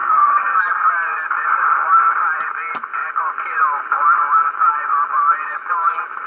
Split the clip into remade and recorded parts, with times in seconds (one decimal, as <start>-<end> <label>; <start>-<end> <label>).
0.0-0.6 remade; 0.6-6.3 recorded